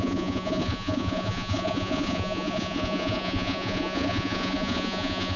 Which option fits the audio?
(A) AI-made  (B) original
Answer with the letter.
A